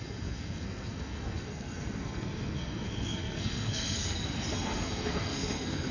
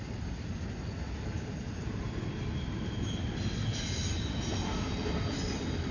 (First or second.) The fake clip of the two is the first